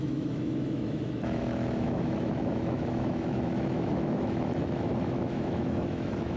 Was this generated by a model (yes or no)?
yes